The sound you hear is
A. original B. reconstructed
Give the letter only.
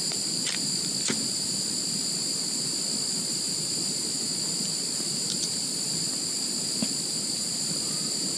A